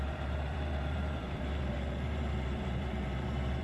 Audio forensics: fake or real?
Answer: fake